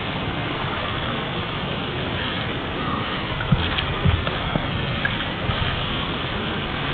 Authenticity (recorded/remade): remade